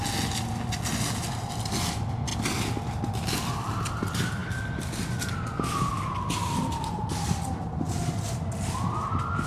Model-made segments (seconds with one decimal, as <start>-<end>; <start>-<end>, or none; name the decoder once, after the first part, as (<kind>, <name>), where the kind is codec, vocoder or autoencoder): none